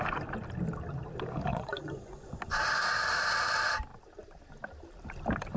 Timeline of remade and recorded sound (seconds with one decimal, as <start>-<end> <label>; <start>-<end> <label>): 0.0-1.5 recorded; 1.5-2.3 remade; 2.3-5.6 recorded